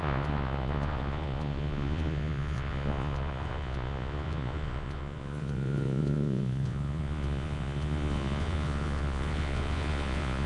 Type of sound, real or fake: fake